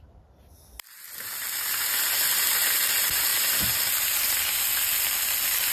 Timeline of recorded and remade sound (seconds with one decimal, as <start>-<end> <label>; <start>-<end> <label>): 0.0-5.7 recorded